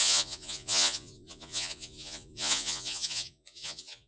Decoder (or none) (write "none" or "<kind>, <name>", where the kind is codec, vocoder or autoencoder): vocoder, Vocos